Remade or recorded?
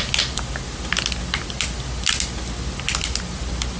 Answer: recorded